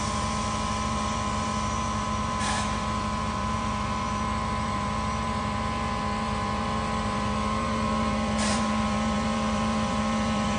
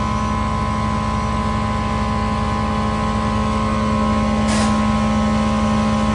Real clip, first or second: second